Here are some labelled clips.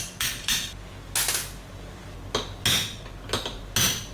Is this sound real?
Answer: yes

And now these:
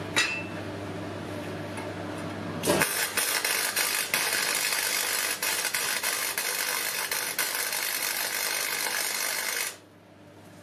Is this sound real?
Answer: yes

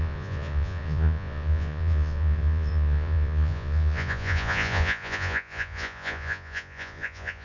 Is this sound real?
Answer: no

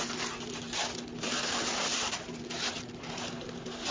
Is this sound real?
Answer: yes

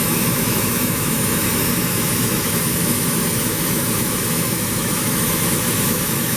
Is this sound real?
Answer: no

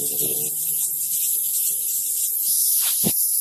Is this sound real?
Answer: yes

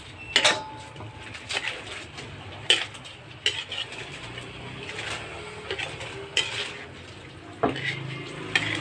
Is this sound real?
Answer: yes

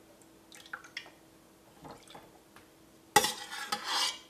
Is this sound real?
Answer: yes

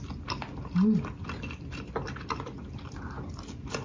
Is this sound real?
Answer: yes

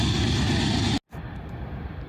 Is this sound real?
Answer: yes